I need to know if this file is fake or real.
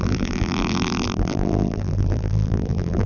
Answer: fake